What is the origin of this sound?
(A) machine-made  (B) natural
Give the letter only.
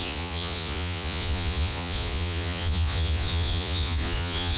A